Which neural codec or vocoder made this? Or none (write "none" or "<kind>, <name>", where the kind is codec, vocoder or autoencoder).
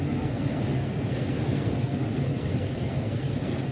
codec, SNAC